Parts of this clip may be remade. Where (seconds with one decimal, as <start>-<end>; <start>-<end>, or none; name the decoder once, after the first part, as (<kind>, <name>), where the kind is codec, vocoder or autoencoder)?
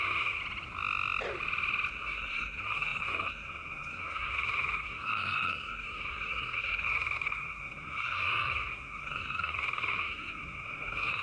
0.0-0.4 (codec, SNAC); 1.9-11.2